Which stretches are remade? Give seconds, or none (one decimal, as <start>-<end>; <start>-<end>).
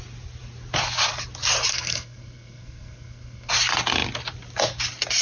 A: 1.7-3.5